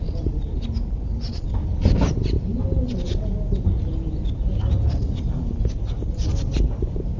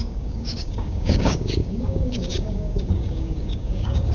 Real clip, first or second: first